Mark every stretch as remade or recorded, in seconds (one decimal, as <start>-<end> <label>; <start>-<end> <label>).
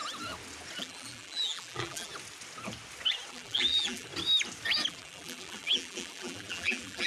0.0-0.8 recorded; 0.8-2.1 remade; 2.1-3.3 recorded; 3.3-4.1 remade; 4.1-4.9 recorded; 4.9-7.1 remade